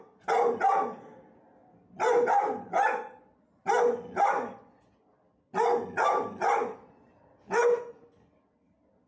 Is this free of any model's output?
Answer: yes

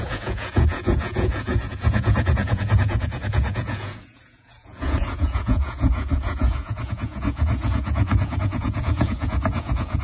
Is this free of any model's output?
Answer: no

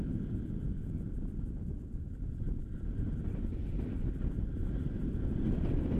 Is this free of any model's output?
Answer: yes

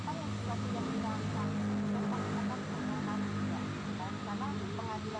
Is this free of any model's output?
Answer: yes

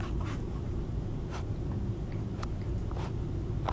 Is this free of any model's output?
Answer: yes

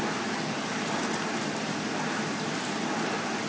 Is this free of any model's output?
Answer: yes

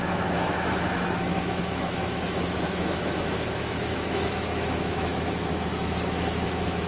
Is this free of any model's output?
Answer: no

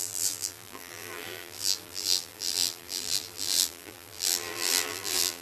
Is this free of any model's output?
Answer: no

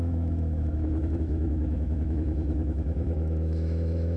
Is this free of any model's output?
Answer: no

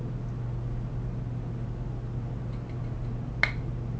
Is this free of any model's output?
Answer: yes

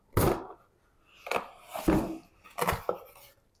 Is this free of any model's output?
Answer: yes